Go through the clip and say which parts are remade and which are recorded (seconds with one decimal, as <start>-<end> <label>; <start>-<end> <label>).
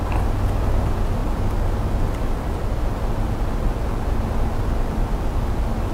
0.0-5.9 recorded